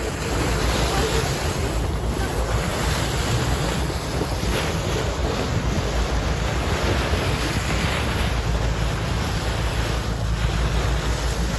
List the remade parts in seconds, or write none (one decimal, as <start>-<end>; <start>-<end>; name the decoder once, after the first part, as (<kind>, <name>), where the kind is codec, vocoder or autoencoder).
none